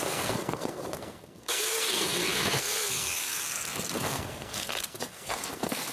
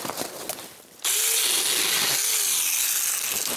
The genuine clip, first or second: second